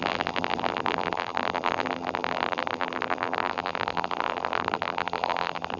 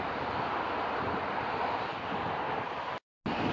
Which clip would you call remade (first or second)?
first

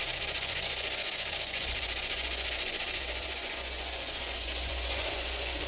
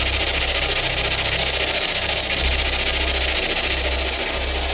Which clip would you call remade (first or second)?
first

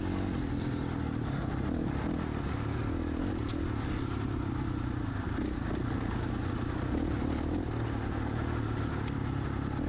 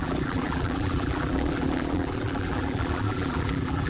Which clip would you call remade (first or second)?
second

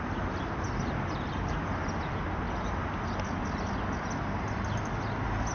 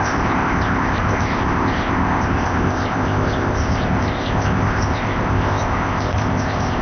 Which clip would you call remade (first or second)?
second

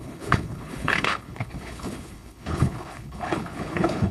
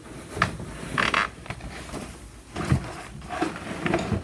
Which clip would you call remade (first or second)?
first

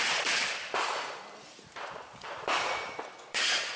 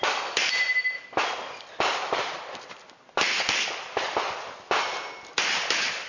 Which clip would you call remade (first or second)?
first